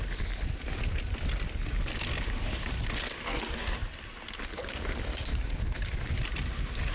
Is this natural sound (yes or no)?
yes